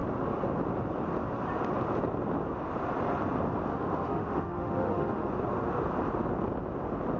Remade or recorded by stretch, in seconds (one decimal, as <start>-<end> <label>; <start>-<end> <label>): 0.0-3.7 recorded; 3.7-5.3 remade; 5.3-7.2 recorded